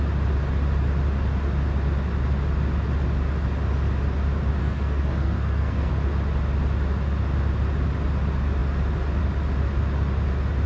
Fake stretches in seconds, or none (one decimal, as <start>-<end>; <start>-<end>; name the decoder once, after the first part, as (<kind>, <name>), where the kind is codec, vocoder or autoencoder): 4.6-5.9 (codec, SNAC)